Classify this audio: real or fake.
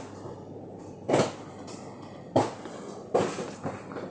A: real